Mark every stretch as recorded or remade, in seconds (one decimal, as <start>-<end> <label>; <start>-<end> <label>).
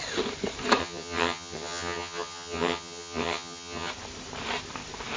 0.0-0.8 recorded; 0.8-3.9 remade; 3.9-5.2 recorded